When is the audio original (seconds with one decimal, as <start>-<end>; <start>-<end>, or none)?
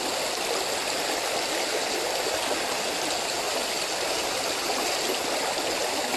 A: 0.0-3.6; 5.6-6.2